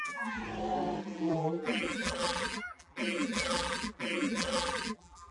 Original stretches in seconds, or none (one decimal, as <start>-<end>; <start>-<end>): 0.4-1.0